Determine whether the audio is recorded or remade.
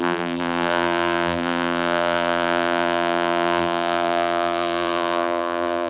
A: remade